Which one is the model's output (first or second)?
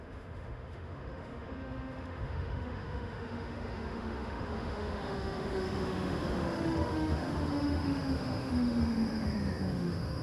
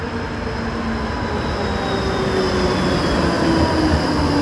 first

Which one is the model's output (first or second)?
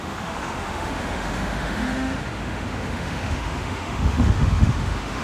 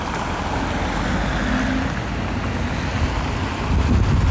first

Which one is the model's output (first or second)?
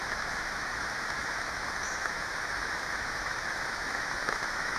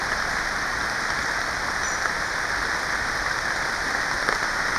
first